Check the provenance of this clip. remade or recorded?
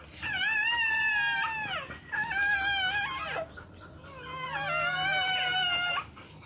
recorded